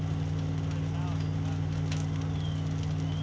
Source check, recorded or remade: recorded